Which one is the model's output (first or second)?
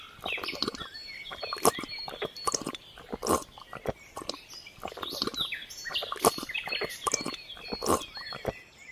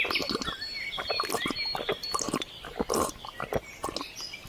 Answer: first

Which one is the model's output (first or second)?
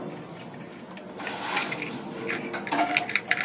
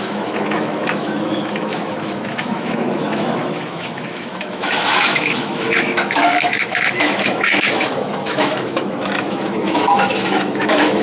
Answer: second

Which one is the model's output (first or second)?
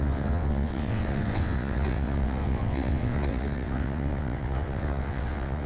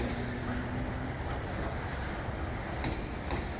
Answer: first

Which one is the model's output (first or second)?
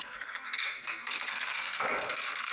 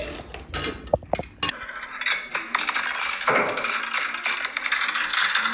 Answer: first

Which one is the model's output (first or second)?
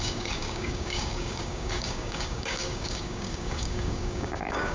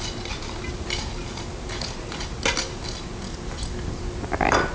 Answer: first